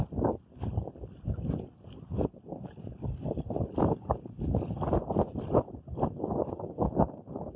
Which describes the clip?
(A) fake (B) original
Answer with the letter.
B